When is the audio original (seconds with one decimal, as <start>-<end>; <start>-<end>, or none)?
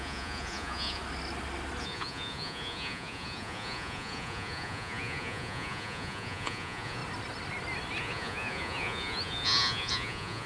1.0-1.8; 7.0-8.0